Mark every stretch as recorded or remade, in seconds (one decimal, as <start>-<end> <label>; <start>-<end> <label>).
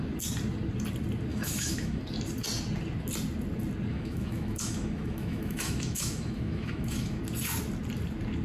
0.0-1.3 recorded; 1.3-2.0 remade; 2.0-3.9 recorded; 3.9-7.2 remade; 7.2-8.4 recorded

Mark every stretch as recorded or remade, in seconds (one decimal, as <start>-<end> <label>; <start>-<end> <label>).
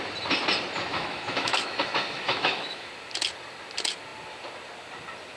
0.0-0.9 recorded; 0.9-2.9 remade; 2.9-5.4 recorded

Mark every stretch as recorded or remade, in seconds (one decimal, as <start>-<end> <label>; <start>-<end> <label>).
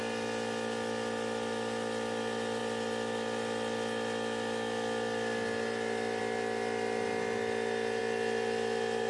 0.0-9.1 recorded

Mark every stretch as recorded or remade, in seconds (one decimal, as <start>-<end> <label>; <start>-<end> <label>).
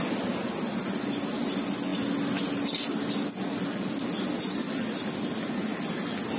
0.0-6.4 recorded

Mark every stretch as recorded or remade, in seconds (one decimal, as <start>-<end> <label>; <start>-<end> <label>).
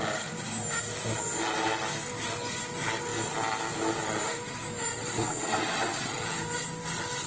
0.0-4.9 recorded; 4.9-6.1 remade; 6.1-7.3 recorded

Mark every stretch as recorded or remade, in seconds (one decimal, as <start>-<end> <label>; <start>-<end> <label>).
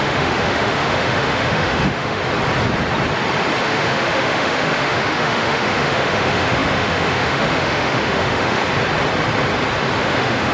0.0-2.2 remade; 2.2-3.6 recorded; 3.6-8.6 remade; 8.6-10.0 recorded; 10.0-10.5 remade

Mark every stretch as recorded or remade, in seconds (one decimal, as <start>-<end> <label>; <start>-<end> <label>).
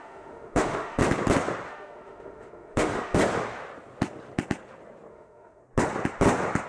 0.0-1.0 remade; 1.0-1.7 recorded; 1.7-3.2 remade; 3.2-5.1 recorded; 5.1-5.6 remade; 5.6-6.7 recorded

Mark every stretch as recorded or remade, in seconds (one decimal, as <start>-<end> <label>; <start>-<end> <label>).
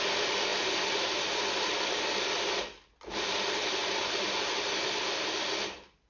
0.0-6.1 recorded